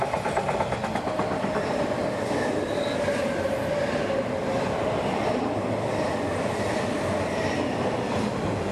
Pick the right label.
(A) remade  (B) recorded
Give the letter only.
B